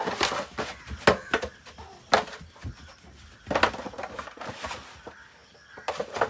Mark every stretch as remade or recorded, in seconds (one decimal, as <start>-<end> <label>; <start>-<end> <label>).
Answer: 0.0-6.3 recorded